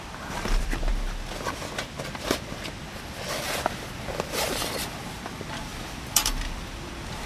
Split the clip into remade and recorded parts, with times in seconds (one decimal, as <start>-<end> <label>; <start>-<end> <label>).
0.0-0.9 remade; 0.9-5.3 recorded; 5.3-7.3 remade